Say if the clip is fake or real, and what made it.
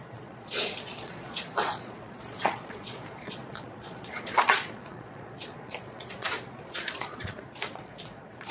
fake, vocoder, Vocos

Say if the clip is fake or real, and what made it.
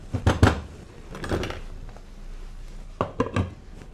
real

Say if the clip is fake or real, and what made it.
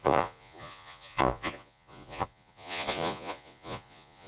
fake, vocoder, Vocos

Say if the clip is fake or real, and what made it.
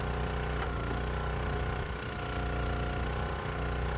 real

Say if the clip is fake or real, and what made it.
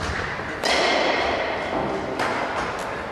real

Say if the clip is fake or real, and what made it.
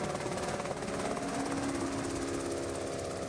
real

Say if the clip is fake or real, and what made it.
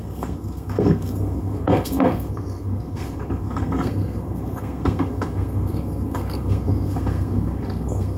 fake, codec, SNAC